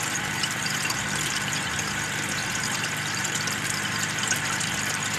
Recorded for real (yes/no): no